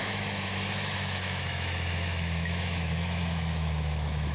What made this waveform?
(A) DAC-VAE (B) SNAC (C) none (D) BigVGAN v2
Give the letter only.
A